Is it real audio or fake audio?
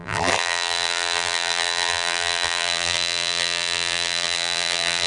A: fake